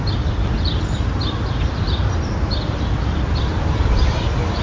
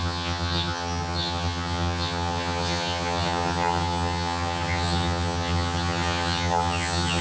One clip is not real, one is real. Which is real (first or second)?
first